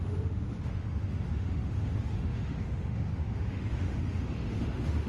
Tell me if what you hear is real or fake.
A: fake